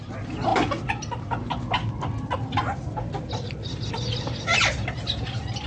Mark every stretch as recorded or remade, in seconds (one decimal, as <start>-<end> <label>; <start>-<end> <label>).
0.0-5.7 recorded